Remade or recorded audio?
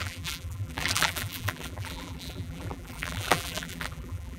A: remade